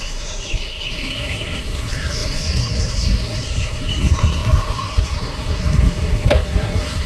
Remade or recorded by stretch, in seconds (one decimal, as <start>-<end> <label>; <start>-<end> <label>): 0.0-7.1 remade